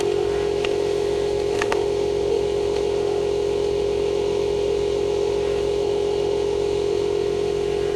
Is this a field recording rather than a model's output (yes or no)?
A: no